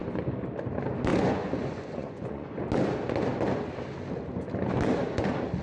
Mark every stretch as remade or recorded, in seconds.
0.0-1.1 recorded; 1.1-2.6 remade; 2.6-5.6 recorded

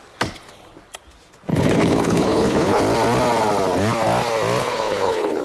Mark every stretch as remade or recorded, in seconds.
0.0-1.5 recorded; 1.5-2.8 remade; 2.8-4.6 recorded; 4.6-5.4 remade

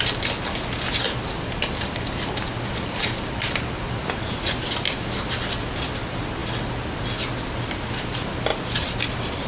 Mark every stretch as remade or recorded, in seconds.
0.0-9.5 recorded

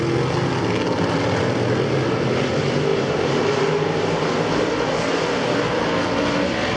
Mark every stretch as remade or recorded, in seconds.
0.0-2.9 recorded; 2.9-4.7 remade; 4.7-6.8 recorded